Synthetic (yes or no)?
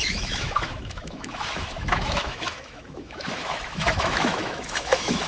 yes